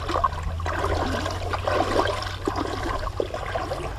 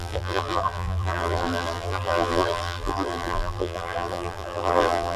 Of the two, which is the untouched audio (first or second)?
first